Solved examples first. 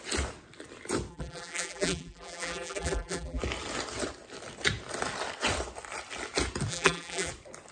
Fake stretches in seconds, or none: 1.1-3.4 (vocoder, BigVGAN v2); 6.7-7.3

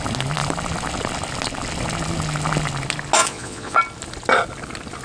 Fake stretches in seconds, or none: 3.2-3.8 (vocoder, Vocos)